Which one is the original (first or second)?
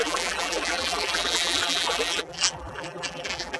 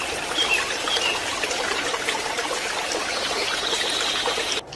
second